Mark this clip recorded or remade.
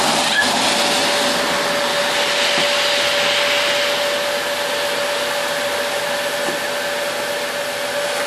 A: recorded